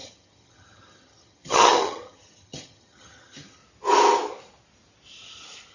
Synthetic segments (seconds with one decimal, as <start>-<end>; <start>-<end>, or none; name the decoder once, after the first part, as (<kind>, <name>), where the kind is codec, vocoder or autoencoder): 0.0-3.6 (vocoder, HiFi-GAN)